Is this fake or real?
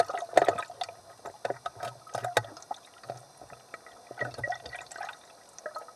real